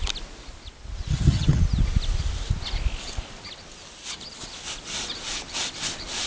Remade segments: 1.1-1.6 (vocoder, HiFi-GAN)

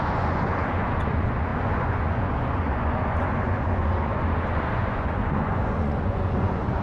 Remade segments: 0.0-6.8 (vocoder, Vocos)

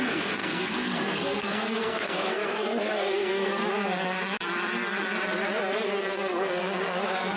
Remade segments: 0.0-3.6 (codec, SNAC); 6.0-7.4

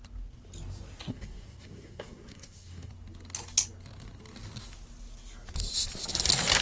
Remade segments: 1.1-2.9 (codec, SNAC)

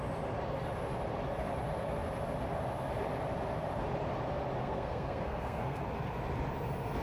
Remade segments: 4.6-5.8 (codec, SNAC)

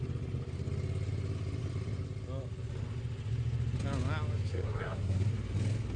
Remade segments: 4.5-5.3 (codec, SNAC)